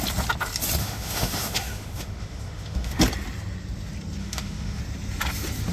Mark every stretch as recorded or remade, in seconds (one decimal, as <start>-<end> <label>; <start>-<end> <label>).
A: 0.0-0.8 recorded; 0.8-3.0 remade; 3.0-4.2 recorded; 4.2-4.8 remade; 4.8-5.7 recorded